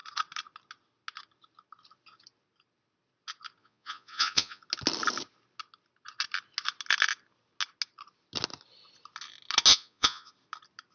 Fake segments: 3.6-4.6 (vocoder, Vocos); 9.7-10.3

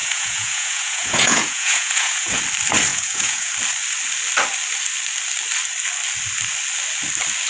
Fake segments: 0.0-2.4 (vocoder, Vocos); 2.9-3.5